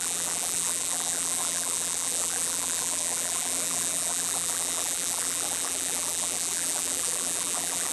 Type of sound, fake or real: fake